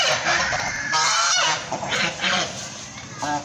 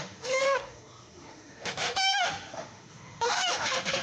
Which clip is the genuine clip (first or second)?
first